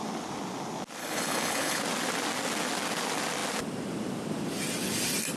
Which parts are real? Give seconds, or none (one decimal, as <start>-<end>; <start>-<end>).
0.0-1.0; 1.8-5.4